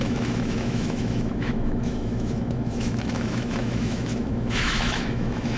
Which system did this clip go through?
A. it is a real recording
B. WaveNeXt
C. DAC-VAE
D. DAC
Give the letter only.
C